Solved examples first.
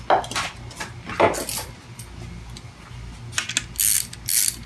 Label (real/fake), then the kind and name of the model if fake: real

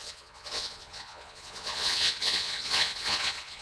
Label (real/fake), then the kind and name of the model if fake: fake, vocoder, Vocos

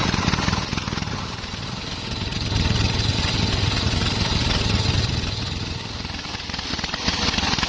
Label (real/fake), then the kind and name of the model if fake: real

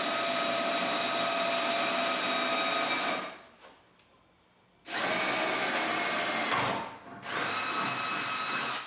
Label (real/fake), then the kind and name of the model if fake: real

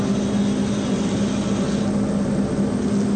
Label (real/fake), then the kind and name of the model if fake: real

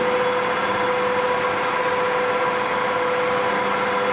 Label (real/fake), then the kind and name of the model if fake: real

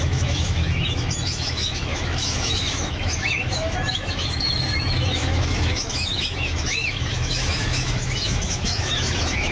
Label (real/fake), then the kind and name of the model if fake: fake, autoencoder, DAC-VAE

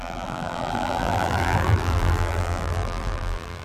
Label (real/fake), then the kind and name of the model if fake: fake, vocoder, BigVGAN v2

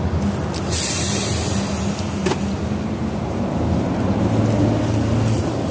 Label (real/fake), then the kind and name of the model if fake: real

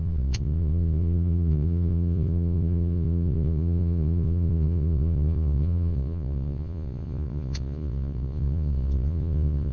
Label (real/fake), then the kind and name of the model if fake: fake, vocoder, Vocos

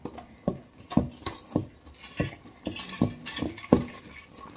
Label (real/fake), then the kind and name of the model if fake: real